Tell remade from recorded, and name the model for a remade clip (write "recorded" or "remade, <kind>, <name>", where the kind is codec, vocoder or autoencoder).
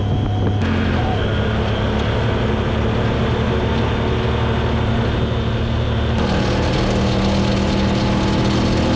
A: recorded